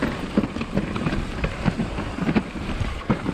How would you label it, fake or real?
fake